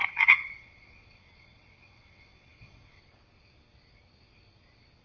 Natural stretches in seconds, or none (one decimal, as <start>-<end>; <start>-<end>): 3.0-5.0